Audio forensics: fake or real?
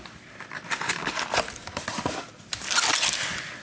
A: real